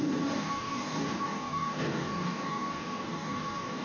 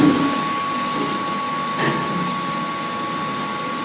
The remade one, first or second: first